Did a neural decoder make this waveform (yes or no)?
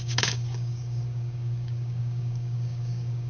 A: yes